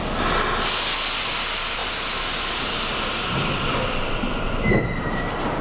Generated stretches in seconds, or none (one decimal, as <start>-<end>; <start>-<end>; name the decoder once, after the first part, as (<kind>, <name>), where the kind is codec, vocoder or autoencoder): none